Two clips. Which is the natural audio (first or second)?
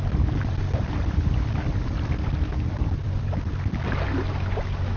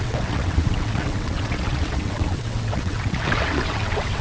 first